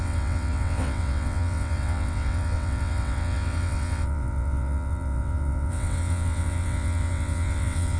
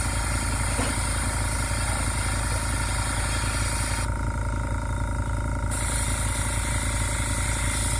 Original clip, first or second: second